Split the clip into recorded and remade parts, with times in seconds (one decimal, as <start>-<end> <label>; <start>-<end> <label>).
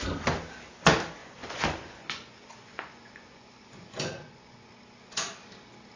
0.0-1.2 recorded; 1.2-4.7 remade; 4.7-6.0 recorded